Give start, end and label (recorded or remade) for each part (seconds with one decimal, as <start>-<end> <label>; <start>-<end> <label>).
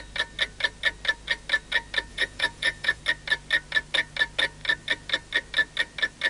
0.0-2.1 recorded; 2.1-3.0 remade; 3.0-6.3 recorded